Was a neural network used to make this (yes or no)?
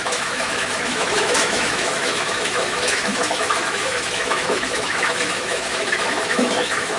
yes